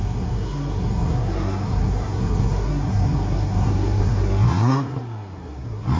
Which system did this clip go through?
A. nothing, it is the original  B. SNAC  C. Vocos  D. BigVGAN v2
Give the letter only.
B